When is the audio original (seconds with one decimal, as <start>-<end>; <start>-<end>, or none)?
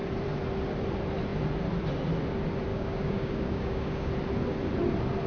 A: 0.0-2.7; 4.1-5.3